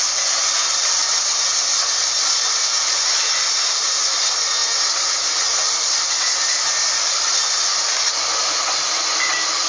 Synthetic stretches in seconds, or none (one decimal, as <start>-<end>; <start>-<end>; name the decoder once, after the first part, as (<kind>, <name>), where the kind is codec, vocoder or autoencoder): none